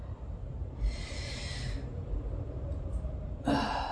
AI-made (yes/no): yes